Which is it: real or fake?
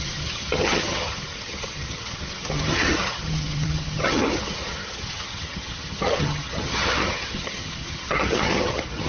fake